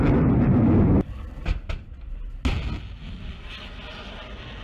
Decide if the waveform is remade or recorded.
recorded